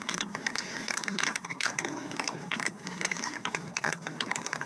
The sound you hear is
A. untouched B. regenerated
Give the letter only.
B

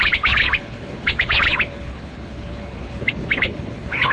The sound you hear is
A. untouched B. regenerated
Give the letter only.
B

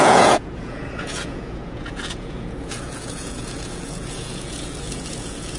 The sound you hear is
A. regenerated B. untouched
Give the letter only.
A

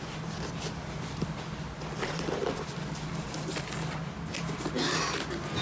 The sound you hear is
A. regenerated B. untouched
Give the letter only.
B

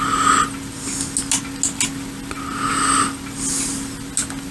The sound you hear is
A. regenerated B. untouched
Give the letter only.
B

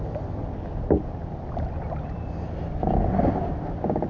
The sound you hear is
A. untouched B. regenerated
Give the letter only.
A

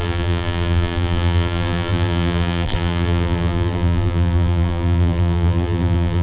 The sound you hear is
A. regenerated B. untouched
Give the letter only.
A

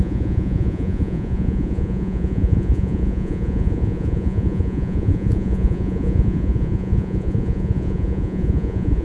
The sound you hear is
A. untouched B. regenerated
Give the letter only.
B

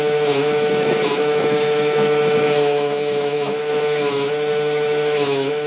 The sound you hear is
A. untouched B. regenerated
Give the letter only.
B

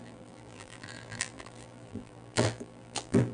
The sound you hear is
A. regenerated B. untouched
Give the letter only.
A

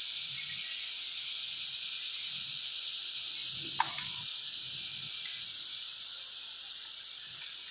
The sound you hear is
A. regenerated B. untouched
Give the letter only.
B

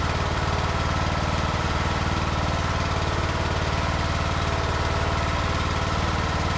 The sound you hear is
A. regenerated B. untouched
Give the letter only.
A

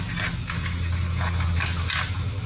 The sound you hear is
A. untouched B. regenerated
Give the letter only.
A